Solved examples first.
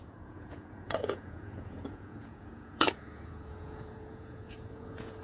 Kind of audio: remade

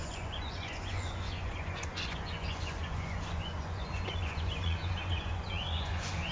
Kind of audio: remade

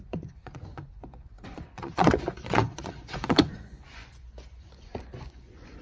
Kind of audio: remade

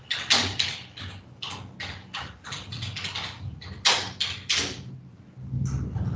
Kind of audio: recorded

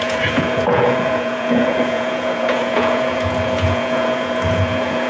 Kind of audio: remade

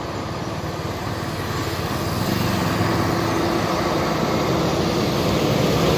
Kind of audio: recorded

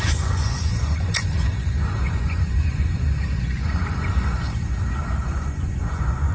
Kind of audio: remade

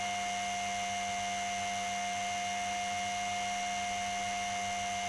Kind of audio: recorded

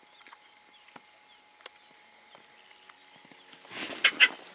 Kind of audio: recorded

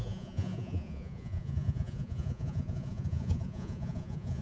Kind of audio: remade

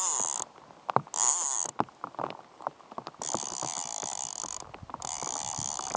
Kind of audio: recorded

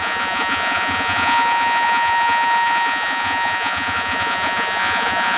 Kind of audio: remade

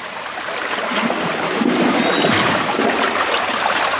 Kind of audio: recorded